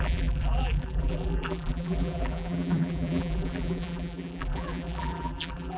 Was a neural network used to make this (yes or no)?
yes